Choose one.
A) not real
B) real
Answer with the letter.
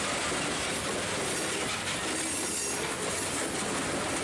B